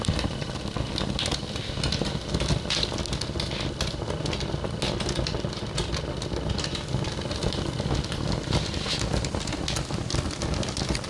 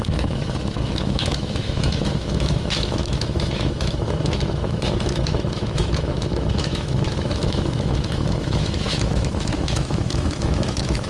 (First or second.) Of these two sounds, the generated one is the second